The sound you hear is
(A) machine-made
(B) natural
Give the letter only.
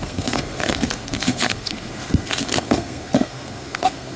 A